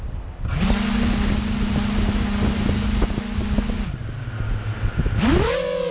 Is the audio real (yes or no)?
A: yes